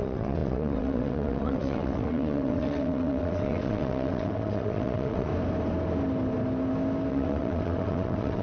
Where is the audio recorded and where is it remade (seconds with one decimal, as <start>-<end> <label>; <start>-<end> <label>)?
0.0-5.3 remade; 5.3-7.1 recorded; 7.1-8.4 remade